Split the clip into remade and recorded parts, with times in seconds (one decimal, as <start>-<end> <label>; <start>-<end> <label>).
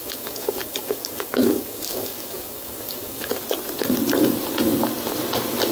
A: 0.0-3.4 remade; 3.4-5.7 recorded